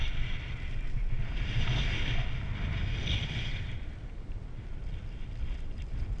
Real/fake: real